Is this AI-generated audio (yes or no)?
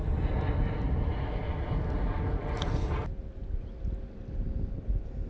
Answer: no